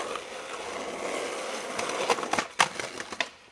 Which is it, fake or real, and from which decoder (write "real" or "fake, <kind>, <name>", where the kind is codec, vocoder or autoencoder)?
real